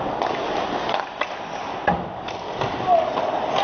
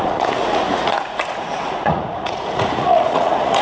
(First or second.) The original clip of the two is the first